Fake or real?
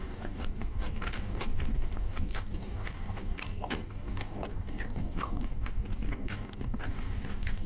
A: fake